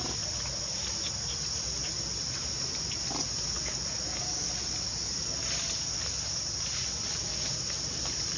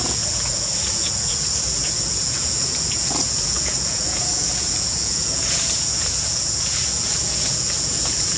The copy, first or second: second